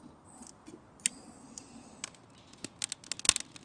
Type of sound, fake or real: real